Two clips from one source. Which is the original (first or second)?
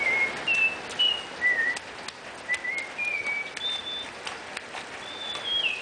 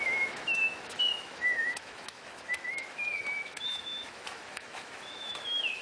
first